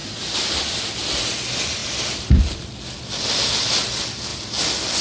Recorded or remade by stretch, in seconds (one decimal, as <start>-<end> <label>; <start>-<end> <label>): 0.0-5.0 recorded